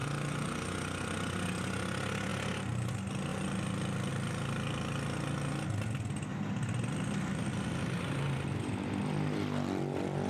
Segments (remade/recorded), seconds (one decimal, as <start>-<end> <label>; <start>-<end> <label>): 0.0-2.3 recorded; 2.3-2.9 remade; 2.9-6.3 recorded; 6.3-9.0 remade; 9.0-10.3 recorded